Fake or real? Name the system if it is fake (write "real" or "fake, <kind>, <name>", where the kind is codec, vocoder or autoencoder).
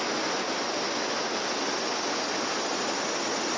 real